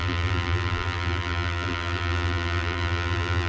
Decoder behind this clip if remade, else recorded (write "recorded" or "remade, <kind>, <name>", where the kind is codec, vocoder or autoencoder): remade, vocoder, BigVGAN v2